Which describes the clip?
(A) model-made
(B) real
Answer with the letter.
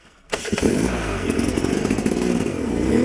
A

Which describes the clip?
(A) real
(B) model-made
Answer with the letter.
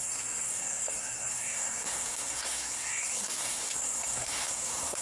B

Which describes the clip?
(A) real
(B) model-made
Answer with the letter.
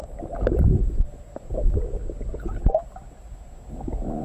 A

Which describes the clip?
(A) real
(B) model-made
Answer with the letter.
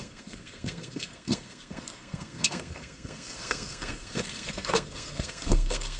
B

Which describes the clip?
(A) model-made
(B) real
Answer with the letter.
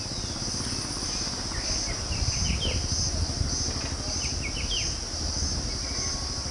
B